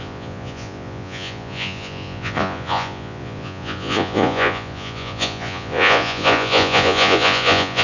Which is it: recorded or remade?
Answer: remade